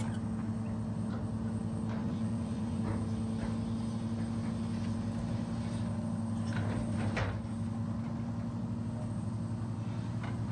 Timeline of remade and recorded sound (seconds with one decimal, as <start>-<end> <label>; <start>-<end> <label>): 0.0-2.0 recorded; 2.0-2.8 remade; 2.8-10.5 recorded